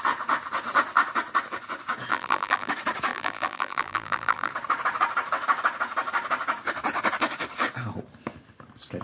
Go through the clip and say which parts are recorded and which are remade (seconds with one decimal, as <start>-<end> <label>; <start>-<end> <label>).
0.0-2.1 recorded; 2.1-2.7 remade; 2.7-3.1 recorded; 3.1-4.5 remade; 4.5-9.0 recorded